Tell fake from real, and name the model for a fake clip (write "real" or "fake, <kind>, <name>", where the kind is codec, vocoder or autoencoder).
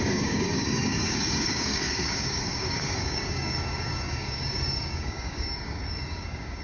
fake, codec, DAC